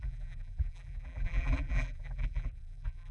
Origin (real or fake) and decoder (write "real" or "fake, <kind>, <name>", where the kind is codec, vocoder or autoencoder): fake, vocoder, BigVGAN v2